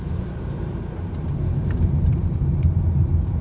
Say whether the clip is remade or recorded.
remade